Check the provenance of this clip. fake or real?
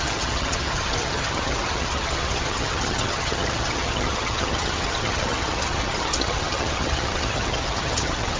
fake